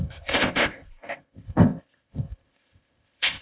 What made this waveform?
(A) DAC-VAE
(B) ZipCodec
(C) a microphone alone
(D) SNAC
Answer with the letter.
B